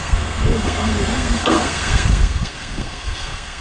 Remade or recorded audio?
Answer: remade